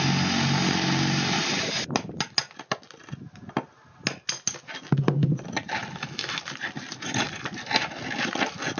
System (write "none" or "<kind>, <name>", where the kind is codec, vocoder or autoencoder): none